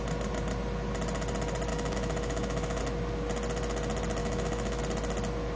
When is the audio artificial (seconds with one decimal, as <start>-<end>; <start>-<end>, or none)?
1.7-2.8; 4.2-4.8

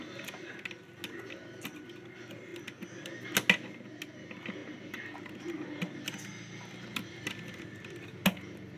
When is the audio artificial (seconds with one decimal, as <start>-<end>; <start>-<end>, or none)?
none

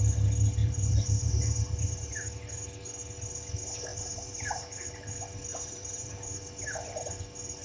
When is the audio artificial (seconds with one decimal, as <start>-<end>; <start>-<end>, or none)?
0.6-2.1; 3.9-4.9; 5.5-6.3

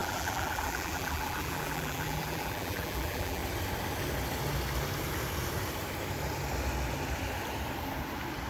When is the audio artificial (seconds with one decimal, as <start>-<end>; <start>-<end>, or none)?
0.0-3.4

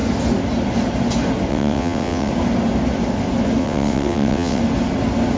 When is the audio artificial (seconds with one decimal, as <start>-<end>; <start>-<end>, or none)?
1.5-2.3; 3.6-4.6

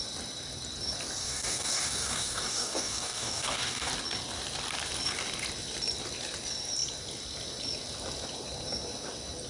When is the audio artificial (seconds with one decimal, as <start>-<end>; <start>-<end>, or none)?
1.2-3.9

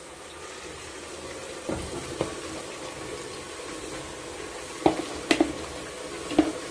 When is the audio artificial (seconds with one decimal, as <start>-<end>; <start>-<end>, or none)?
1.4-2.3

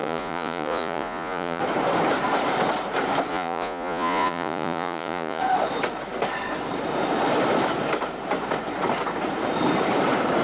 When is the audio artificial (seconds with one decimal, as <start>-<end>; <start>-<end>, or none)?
0.0-1.6; 3.3-5.4